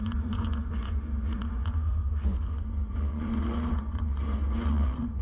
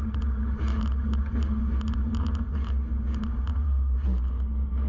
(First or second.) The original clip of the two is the second